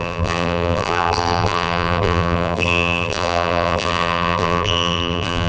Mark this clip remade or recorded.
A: remade